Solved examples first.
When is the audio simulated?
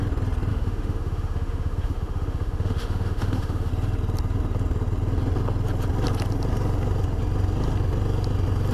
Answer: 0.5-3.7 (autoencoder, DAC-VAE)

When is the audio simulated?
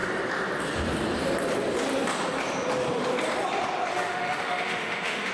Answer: 3.9-5.3 (autoencoder, DAC-VAE)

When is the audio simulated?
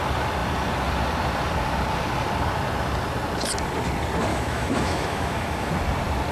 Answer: 4.3-5.7 (autoencoder, DAC-VAE)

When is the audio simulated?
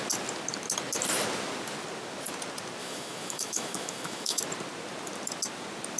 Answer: 2.8-4.4 (autoencoder, DAC-VAE)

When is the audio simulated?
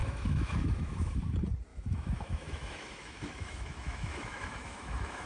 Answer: 0.0-1.2 (autoencoder, DAC-VAE); 1.7-5.3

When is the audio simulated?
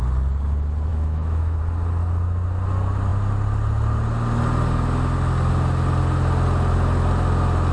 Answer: 0.9-1.6 (autoencoder, DAC-VAE)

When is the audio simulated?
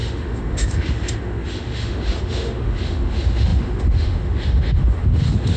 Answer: 0.0-5.6 (autoencoder, DAC-VAE)